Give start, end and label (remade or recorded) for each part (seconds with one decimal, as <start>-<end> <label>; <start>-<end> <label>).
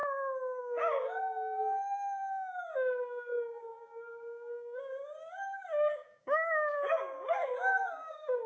0.0-0.6 recorded; 0.6-8.5 remade